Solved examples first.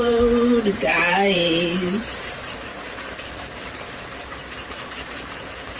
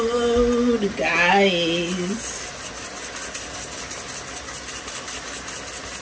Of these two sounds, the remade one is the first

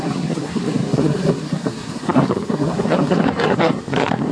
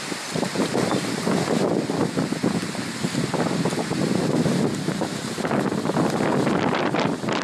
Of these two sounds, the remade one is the first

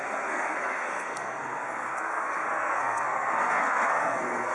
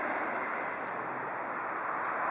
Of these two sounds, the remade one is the first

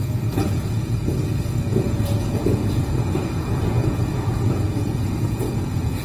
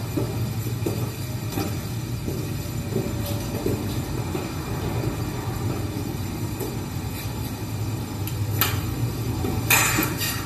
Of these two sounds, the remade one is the first